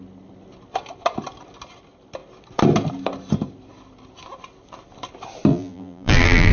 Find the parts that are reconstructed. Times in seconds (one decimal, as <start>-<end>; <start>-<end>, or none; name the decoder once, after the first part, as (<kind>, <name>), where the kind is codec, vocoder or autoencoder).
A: 5.5-6.5 (vocoder, BigVGAN v2)